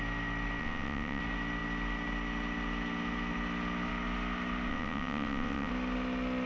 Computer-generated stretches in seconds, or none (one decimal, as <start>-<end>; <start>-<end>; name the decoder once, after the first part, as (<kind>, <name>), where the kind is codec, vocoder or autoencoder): 0.6-1.2 (vocoder, WaveNeXt); 4.7-5.7